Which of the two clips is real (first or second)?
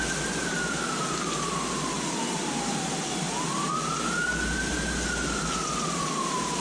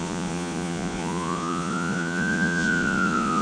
first